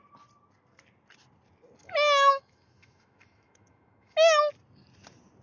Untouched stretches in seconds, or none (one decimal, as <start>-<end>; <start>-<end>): 0.0-1.8; 4.5-5.4